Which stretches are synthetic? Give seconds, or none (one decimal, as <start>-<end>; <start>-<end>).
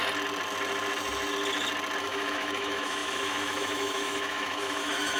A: 2.0-5.2